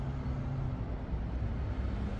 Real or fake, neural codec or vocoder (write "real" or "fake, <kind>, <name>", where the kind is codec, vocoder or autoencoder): real